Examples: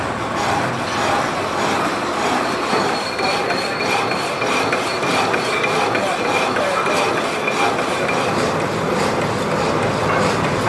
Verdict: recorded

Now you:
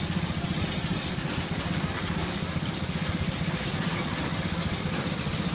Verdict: recorded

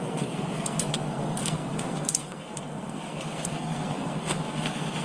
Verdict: remade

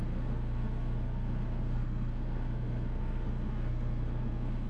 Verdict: remade